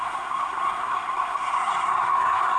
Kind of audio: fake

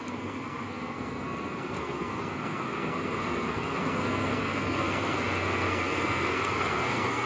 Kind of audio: fake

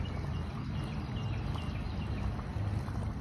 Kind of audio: real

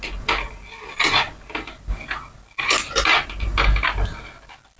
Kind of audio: real